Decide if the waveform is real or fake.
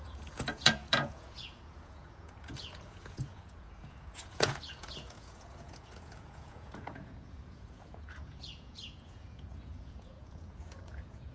fake